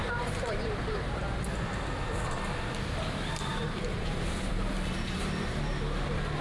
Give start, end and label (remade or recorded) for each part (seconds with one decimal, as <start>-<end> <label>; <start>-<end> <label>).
0.0-1.2 remade; 1.2-3.5 recorded; 3.5-4.5 remade; 4.5-6.4 recorded